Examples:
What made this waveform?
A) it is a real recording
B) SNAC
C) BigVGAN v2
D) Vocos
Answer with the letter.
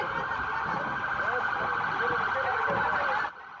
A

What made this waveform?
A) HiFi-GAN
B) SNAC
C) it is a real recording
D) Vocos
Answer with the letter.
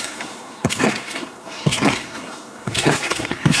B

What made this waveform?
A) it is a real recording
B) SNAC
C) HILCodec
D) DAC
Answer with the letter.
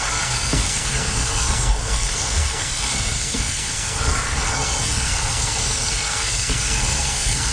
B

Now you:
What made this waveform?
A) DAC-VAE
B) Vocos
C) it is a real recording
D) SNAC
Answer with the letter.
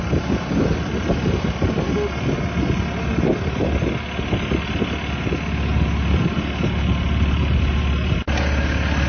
C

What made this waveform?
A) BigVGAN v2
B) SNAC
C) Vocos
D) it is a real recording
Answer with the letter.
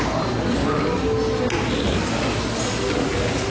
D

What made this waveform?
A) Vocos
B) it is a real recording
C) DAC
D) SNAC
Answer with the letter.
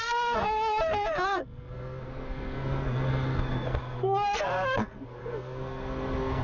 D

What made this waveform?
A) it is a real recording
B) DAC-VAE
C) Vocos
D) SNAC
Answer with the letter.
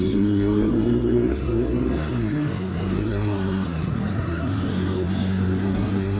D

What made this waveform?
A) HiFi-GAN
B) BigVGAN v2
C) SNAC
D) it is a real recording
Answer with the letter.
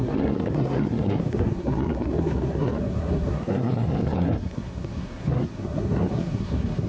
C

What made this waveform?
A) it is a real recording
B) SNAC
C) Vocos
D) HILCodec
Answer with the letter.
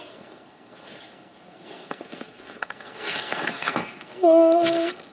B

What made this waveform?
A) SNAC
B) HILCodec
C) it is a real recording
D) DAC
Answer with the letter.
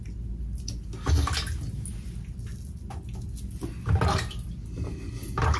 C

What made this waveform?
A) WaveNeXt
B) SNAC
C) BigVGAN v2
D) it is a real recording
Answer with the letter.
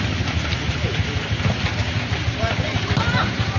D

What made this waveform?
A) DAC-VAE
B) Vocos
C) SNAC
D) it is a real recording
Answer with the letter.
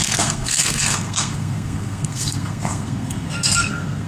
C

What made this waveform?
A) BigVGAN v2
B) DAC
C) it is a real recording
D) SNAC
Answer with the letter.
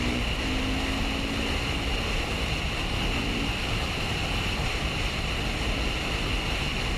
C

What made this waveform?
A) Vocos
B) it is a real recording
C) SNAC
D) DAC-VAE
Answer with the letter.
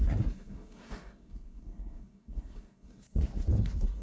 C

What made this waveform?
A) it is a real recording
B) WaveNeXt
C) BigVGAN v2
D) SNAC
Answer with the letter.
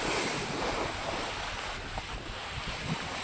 A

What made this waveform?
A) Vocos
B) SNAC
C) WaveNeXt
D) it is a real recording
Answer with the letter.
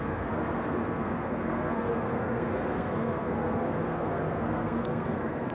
B